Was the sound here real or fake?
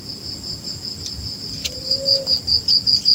real